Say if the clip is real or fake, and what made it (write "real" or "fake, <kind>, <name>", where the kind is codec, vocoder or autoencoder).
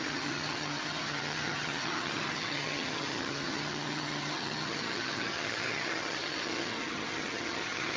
fake, vocoder, HiFi-GAN